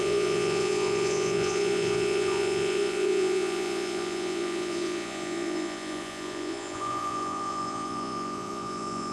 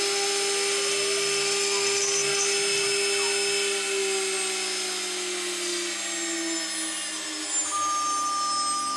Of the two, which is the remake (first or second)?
first